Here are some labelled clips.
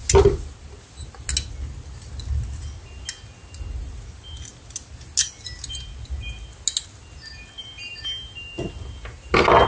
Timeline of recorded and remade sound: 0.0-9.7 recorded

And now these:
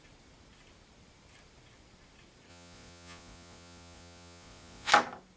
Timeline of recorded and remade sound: 0.0-2.5 recorded; 2.5-4.9 remade; 4.9-5.4 recorded